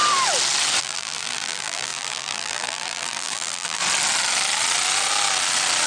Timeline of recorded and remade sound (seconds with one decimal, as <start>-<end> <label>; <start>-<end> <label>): 0.0-0.8 recorded; 0.8-3.8 remade; 3.8-5.9 recorded